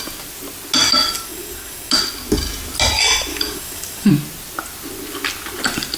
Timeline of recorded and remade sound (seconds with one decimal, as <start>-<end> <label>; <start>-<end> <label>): 0.0-0.8 recorded; 0.8-2.0 remade; 2.0-3.3 recorded; 3.3-4.1 remade; 4.1-6.0 recorded